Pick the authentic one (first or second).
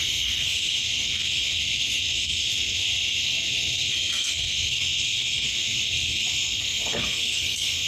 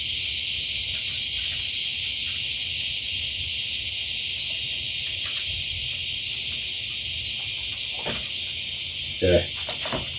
second